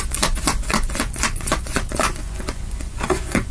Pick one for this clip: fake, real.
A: fake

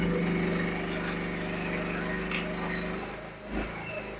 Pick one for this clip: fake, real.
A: real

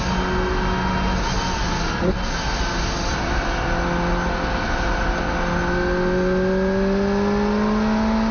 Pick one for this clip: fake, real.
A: real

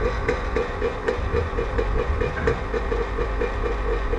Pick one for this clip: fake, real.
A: fake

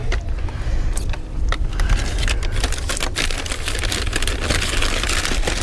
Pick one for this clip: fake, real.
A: real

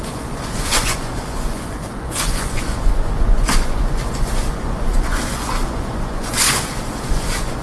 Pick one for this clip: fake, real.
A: fake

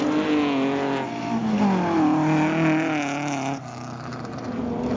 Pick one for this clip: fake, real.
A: real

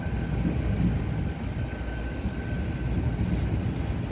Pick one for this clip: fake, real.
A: real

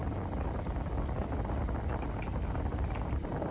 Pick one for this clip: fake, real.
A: real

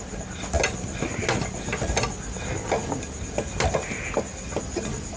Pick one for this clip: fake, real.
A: real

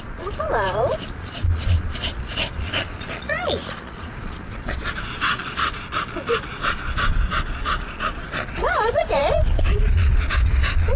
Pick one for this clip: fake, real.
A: fake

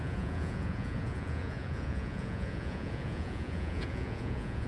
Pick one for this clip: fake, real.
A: fake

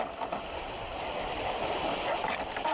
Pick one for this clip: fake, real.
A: real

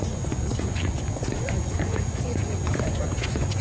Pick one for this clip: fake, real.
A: fake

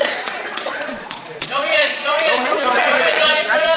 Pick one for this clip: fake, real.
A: fake